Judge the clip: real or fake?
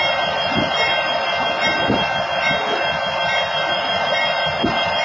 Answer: real